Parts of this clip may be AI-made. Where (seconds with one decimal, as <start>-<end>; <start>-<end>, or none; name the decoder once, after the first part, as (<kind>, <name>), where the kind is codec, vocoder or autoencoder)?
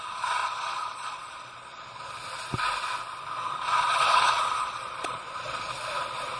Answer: 0.4-2.1 (vocoder, Vocos); 3.9-5.7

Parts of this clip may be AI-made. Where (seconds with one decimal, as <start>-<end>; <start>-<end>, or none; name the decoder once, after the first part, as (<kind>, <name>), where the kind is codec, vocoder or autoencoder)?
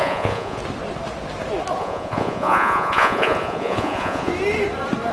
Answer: 0.0-0.6 (vocoder, Vocos); 1.8-4.3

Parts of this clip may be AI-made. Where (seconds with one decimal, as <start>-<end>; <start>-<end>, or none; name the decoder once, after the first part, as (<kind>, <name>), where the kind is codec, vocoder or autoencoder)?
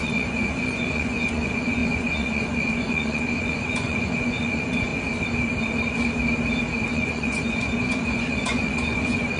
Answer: 0.0-4.9 (vocoder, Vocos); 6.9-9.4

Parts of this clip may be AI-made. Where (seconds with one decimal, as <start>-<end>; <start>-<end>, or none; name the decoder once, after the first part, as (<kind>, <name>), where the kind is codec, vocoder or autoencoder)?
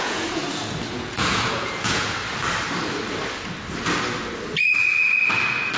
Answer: 0.0-0.4 (vocoder, Vocos); 0.9-2.2